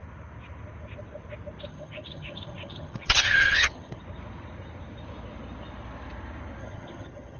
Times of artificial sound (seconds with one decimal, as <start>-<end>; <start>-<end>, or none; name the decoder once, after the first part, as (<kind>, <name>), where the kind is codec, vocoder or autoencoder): 1.7-4.0 (vocoder, HiFi-GAN); 6.6-7.4